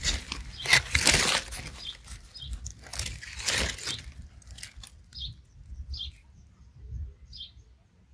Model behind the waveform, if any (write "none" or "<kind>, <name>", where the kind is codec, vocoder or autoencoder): none